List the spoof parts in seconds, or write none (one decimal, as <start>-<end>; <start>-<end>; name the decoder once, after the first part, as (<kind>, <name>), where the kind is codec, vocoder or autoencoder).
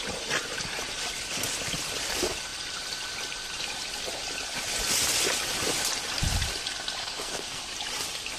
7.0-7.6 (codec, SNAC)